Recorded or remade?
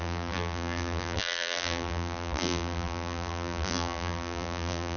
remade